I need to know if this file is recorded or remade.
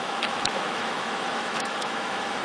remade